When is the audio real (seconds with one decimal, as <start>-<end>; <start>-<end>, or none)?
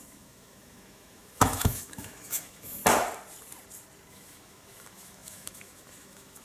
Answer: 2.8-4.1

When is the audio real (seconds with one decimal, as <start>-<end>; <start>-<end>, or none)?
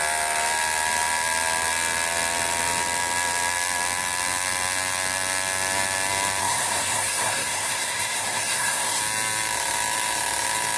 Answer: 0.0-6.4; 9.0-10.8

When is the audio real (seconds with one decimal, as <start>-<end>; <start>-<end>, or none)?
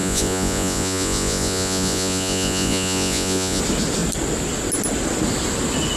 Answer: 3.6-6.0